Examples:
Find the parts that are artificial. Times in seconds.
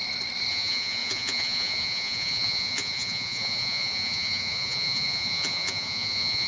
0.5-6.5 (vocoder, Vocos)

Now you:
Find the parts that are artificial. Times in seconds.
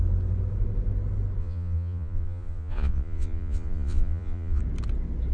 1.4-4.6 (vocoder, Vocos)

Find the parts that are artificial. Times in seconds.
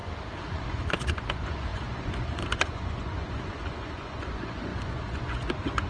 0.5-5.9 (vocoder, Vocos)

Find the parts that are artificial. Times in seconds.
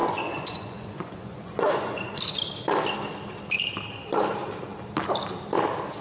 0.0-2.2 (vocoder, Vocos)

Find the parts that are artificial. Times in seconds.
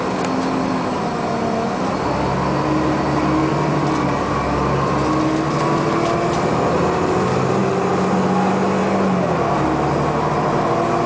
none